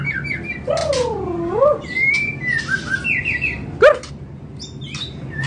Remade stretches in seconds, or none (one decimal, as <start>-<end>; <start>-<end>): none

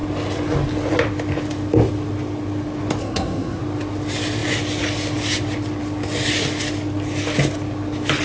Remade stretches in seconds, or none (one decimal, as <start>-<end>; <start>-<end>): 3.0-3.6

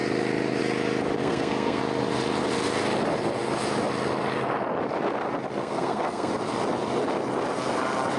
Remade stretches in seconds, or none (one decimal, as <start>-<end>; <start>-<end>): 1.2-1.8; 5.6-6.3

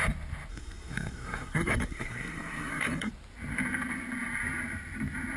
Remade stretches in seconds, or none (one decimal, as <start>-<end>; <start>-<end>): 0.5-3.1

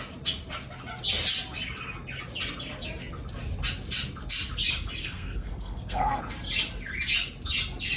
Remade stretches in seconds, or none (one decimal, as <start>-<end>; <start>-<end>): 5.0-6.2